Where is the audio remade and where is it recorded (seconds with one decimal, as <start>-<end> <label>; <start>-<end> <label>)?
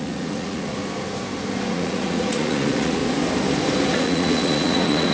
0.0-0.8 remade; 0.8-1.7 recorded; 1.7-3.0 remade; 3.0-3.9 recorded; 3.9-5.1 remade